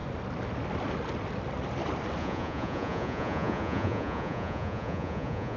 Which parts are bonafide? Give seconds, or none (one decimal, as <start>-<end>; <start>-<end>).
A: 0.0-2.2